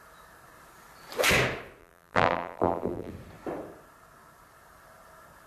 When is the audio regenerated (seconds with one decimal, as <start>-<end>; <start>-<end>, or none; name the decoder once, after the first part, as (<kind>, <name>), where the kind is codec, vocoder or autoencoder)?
1.8-3.1 (vocoder, BigVGAN v2)